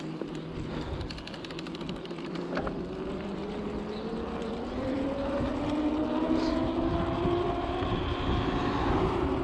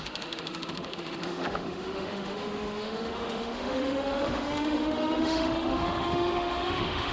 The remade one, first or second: second